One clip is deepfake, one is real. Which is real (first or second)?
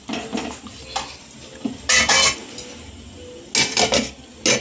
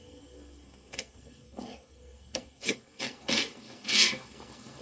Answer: first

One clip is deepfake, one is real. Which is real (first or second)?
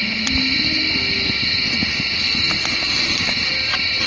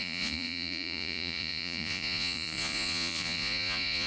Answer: first